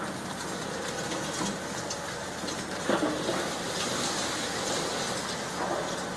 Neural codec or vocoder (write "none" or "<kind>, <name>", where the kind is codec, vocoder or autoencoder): none